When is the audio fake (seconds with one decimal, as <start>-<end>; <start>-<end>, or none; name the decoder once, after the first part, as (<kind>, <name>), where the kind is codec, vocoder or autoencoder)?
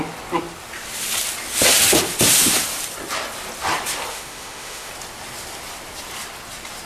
4.1-4.9 (autoencoder, DAC-VAE)